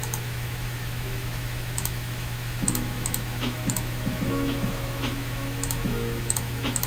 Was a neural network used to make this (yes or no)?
yes